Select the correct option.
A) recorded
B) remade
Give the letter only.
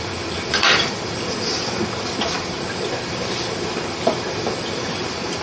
B